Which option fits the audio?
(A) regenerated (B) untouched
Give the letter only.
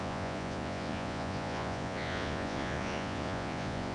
A